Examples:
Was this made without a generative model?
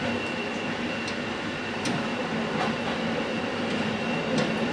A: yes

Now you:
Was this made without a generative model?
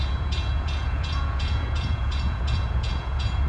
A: no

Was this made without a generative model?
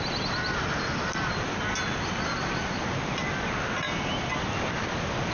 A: yes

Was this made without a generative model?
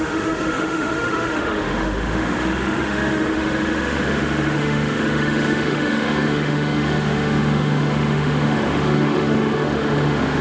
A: no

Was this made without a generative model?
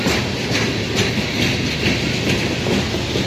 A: yes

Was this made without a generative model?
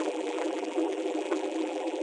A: no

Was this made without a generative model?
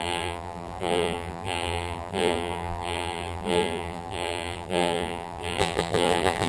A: no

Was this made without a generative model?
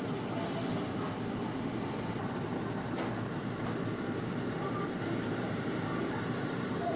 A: no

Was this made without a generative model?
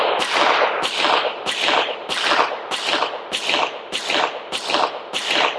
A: yes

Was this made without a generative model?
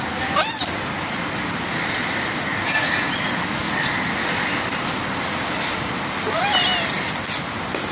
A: yes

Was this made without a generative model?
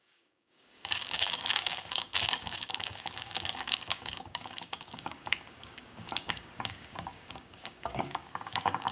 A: no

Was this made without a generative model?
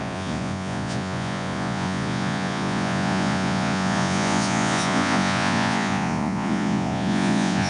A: no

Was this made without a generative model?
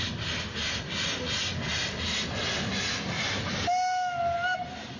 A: yes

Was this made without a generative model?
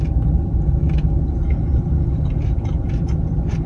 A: yes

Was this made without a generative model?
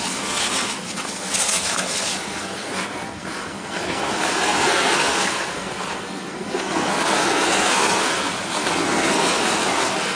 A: no